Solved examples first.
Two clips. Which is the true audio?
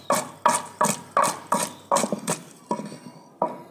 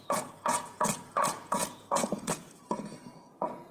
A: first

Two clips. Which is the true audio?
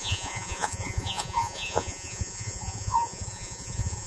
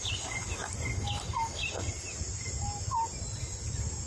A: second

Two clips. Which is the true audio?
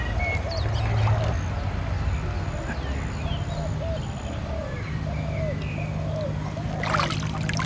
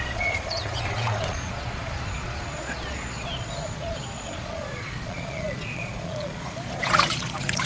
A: first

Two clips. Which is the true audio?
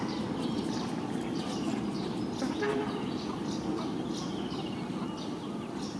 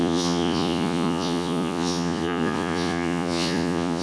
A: first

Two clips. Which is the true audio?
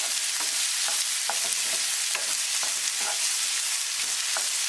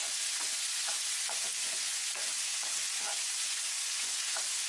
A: first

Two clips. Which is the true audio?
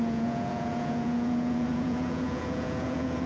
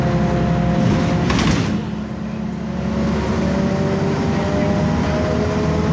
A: second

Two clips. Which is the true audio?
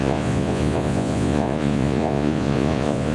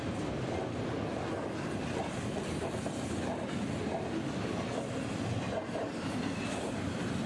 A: second